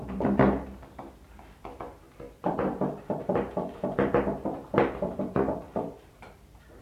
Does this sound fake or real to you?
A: fake